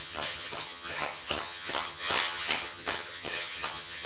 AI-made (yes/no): yes